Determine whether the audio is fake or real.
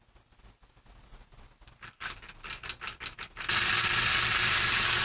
real